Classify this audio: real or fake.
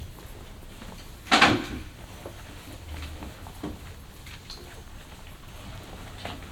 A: real